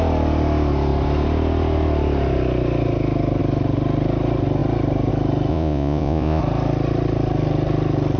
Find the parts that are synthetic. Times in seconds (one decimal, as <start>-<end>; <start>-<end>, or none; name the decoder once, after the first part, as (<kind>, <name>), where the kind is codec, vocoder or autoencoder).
5.5-6.4 (vocoder, Vocos)